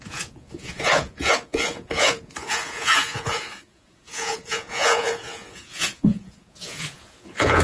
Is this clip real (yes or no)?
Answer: no